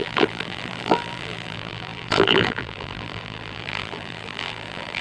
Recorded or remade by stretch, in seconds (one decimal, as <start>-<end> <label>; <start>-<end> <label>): 0.0-5.0 remade